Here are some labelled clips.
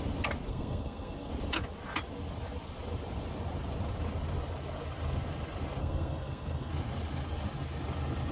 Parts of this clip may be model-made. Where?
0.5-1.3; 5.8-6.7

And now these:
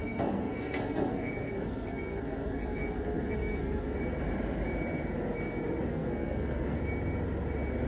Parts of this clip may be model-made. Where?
0.0-4.0; 5.9-6.8

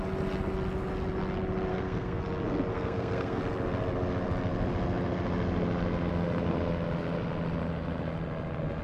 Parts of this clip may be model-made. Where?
1.7-2.2; 2.7-3.4

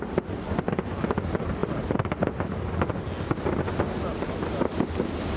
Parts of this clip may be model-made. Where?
none

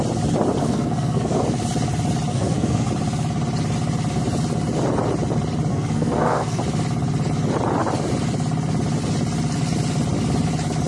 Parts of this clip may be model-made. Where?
0.6-1.4; 2.3-2.9; 5.7-6.6